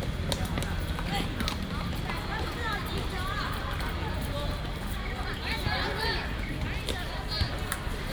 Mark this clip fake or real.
real